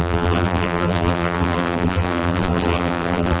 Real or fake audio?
fake